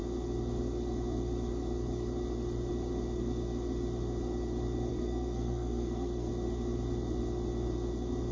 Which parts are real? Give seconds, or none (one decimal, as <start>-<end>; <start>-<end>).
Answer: 0.0-4.9; 6.3-8.3